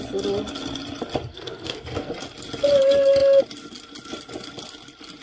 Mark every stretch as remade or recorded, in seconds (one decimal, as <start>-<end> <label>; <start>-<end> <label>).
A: 0.0-1.3 recorded; 1.3-2.1 remade; 2.1-5.2 recorded